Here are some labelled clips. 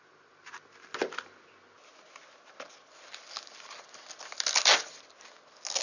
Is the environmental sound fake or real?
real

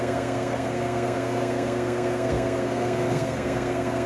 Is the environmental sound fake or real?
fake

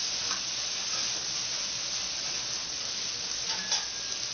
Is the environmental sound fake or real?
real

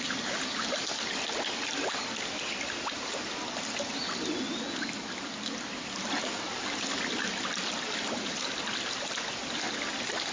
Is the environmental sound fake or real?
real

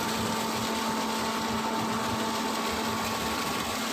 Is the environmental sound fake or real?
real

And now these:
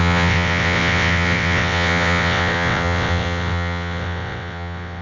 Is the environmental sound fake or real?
fake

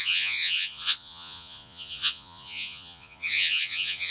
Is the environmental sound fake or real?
fake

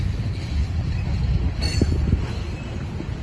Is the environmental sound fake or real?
real